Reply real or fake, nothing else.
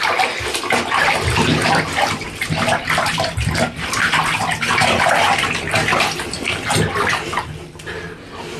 fake